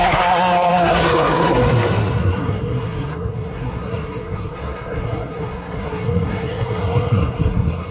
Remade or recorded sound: remade